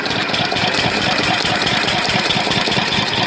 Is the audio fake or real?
fake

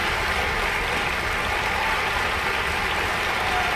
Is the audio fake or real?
real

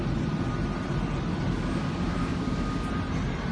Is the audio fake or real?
real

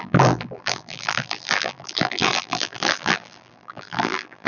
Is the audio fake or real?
fake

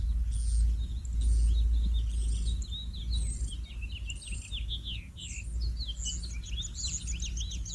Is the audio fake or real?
real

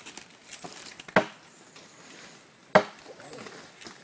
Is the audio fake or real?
real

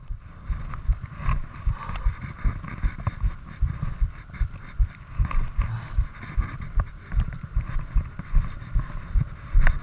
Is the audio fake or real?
real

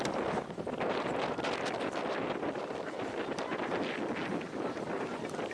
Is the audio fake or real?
fake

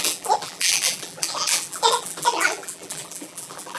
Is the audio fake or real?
fake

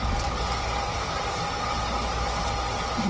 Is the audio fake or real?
real